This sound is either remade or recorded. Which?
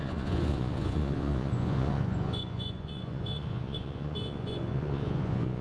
remade